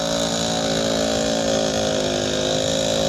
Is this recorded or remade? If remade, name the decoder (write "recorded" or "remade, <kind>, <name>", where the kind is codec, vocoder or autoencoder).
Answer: recorded